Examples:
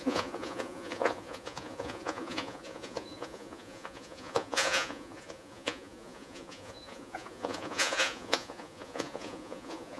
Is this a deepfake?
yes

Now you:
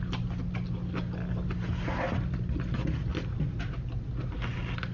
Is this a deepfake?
no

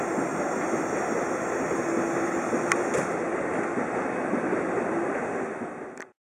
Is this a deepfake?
no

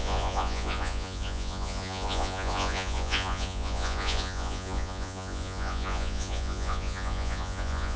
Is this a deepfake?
yes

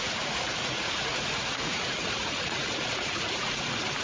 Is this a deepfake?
yes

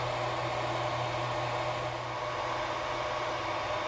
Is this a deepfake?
no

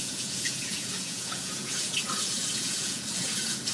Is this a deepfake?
yes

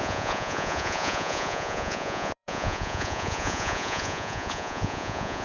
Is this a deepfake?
yes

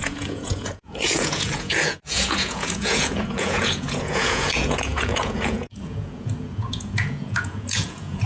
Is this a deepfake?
yes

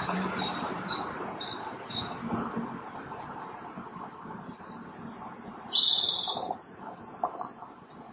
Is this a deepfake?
no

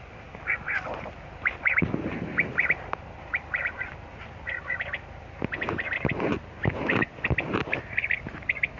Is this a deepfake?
no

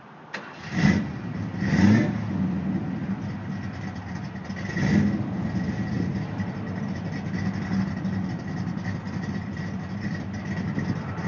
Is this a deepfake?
no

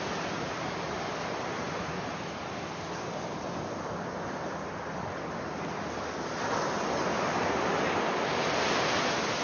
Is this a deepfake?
no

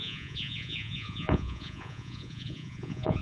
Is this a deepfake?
yes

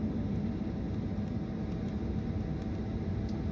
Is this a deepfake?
no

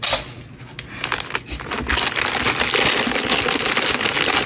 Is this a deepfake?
no